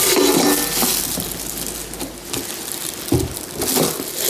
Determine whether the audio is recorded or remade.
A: recorded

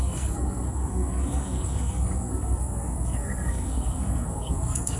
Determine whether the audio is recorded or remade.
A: remade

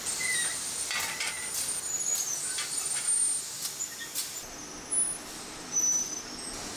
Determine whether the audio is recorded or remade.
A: recorded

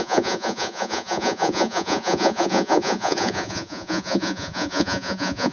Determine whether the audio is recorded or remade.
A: remade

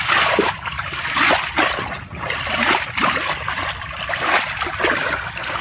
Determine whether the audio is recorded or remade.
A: recorded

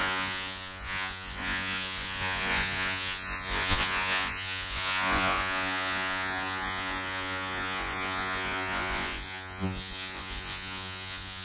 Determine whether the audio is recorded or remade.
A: remade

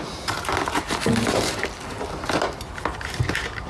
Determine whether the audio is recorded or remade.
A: recorded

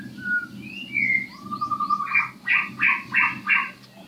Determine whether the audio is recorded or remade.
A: recorded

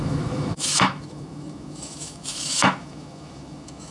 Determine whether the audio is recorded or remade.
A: remade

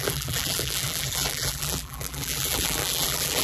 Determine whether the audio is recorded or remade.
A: remade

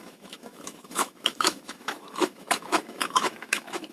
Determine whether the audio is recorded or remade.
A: remade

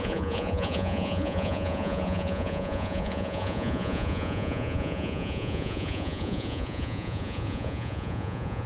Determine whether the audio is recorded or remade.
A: remade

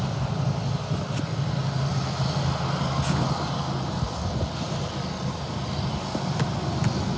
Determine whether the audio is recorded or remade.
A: recorded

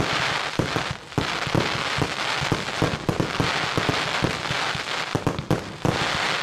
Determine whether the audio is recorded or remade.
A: recorded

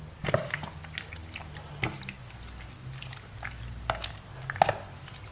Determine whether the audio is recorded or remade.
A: recorded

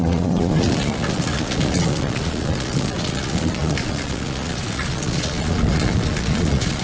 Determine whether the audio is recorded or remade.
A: remade